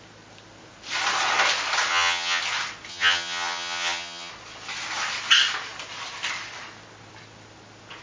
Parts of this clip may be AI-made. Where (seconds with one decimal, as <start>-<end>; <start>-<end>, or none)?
1.9-2.4; 2.9-4.3